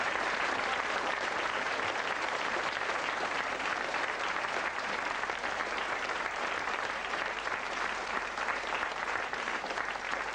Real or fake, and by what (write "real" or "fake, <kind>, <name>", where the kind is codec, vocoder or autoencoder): fake, vocoder, BigVGAN v2